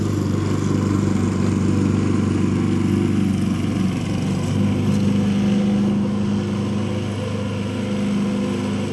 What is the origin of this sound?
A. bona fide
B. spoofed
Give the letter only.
A